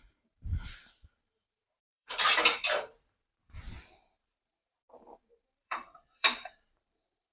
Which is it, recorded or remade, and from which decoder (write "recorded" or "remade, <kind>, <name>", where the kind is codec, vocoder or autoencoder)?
remade, vocoder, BigVGAN v2